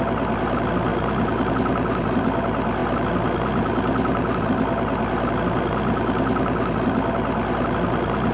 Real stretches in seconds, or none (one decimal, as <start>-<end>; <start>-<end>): 0.0-8.3